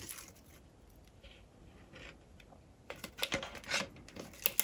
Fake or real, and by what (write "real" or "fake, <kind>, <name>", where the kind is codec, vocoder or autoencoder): real